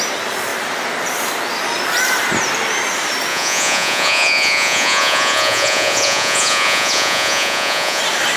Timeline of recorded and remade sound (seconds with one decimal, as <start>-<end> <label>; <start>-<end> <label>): 0.0-3.3 recorded; 3.3-8.0 remade; 8.0-8.4 recorded